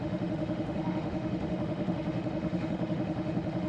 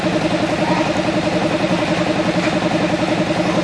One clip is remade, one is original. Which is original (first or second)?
second